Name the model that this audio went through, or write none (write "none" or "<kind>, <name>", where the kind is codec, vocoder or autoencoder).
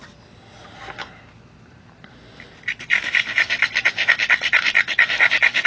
none